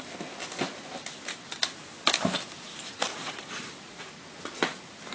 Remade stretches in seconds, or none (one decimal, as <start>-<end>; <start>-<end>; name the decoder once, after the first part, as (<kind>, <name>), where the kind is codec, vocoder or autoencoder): 3.1-4.2 (vocoder, Vocos)